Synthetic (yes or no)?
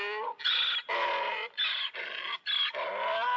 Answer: no